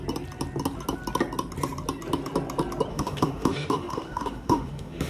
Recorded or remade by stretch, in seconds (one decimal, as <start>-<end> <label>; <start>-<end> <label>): 0.0-2.9 recorded; 2.9-5.1 remade